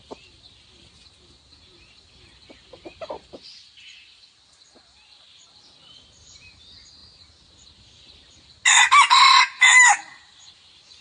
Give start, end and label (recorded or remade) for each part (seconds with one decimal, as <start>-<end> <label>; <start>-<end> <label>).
0.0-11.0 recorded